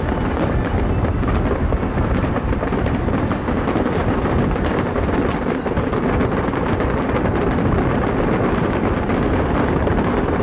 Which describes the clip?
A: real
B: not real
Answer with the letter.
A